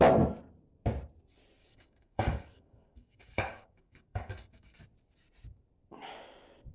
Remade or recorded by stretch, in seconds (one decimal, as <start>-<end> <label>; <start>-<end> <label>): 0.0-1.6 recorded; 1.6-4.8 remade; 4.8-6.7 recorded